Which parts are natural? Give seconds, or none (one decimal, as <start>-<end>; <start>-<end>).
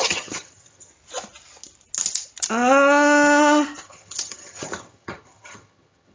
0.9-3.8